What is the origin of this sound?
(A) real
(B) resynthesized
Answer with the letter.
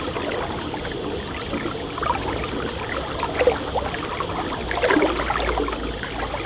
A